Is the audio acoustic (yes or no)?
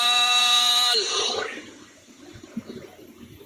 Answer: no